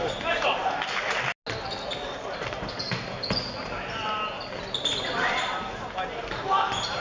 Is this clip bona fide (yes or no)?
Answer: yes